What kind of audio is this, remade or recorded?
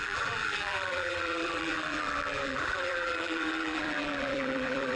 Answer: remade